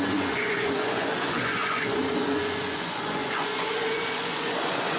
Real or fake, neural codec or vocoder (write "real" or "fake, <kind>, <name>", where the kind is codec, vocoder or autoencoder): fake, vocoder, Vocos